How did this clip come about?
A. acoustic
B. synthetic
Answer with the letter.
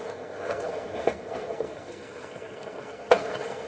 B